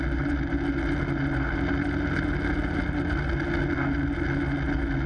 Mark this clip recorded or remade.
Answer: recorded